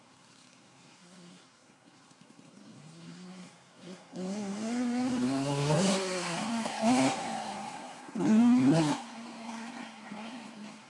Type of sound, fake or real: fake